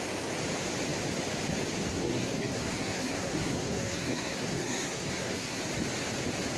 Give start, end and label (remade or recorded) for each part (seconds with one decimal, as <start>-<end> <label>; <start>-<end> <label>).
0.0-1.9 recorded; 1.9-5.6 remade; 5.6-6.6 recorded